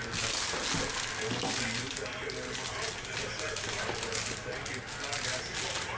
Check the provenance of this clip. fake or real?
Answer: real